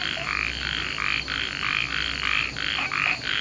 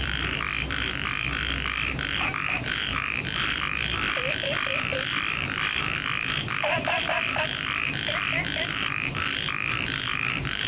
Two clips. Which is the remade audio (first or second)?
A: second